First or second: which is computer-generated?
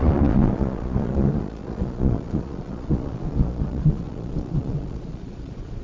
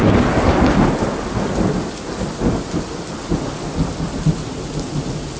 first